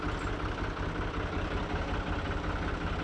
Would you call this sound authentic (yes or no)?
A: yes